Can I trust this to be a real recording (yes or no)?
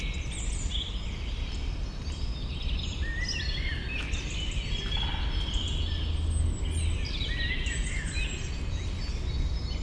yes